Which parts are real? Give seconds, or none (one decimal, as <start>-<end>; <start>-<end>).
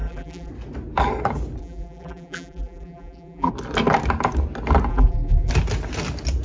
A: 0.5-1.6; 3.5-4.9; 5.5-6.4